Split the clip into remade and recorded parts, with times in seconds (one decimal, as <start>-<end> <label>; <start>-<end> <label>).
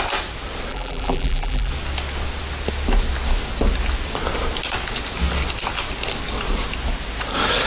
0.0-0.7 recorded; 0.7-1.7 remade; 1.7-7.7 recorded